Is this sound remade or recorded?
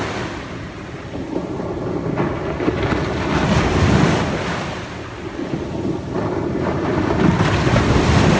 recorded